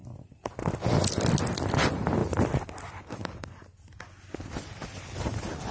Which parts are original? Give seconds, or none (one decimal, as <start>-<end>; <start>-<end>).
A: 0.0-5.7

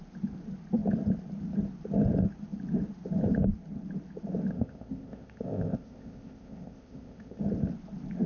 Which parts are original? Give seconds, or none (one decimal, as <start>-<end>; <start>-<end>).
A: 0.0-4.5; 7.4-8.3

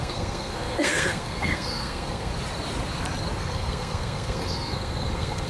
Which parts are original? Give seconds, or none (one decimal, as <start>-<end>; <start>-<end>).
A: 2.3-3.4

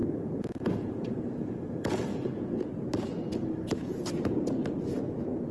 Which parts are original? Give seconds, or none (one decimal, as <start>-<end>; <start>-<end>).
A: 2.6-3.4; 4.0-5.5

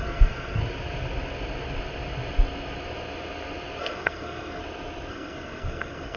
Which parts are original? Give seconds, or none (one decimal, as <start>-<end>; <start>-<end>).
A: 0.6-3.8; 4.6-5.1

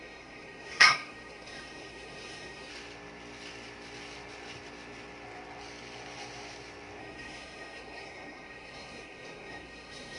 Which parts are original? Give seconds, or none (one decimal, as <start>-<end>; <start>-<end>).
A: 2.7-7.0

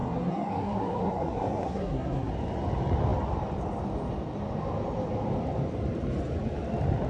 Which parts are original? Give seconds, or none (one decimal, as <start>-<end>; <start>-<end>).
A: 2.3-7.1